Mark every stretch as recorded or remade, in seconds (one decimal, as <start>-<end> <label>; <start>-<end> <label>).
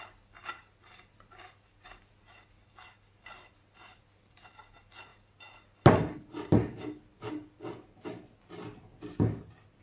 0.0-9.8 recorded